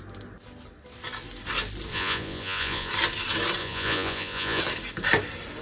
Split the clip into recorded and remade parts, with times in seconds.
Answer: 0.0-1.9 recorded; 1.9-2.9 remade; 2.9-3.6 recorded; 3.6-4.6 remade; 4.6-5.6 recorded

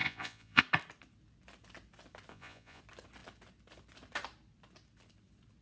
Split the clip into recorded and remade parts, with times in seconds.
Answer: 0.0-0.6 remade; 0.6-2.3 recorded; 2.3-2.8 remade; 2.8-5.6 recorded

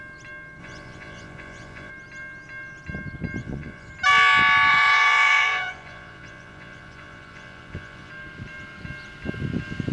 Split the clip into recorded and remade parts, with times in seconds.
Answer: 0.0-0.6 recorded; 0.6-1.9 remade; 1.9-3.4 recorded; 3.4-3.9 remade; 3.9-4.7 recorded; 4.7-8.1 remade; 8.1-9.9 recorded

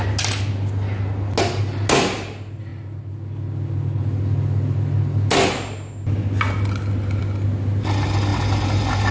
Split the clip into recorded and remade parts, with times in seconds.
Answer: 0.0-9.1 recorded

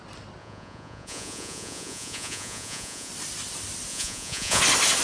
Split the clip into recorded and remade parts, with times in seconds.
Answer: 0.0-0.4 recorded; 0.4-3.1 remade; 3.1-3.9 recorded; 3.9-4.6 remade; 4.6-5.0 recorded

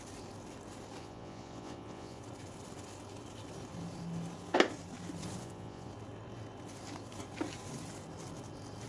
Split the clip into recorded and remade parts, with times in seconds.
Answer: 0.0-1.0 recorded; 1.0-2.2 remade; 2.2-5.4 recorded; 5.4-5.9 remade; 5.9-8.9 recorded

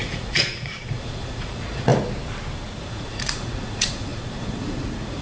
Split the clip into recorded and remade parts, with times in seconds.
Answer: 0.0-1.9 remade; 1.9-2.8 recorded; 2.8-5.2 remade

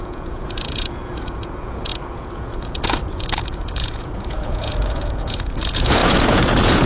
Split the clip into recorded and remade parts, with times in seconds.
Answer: 0.0-6.9 remade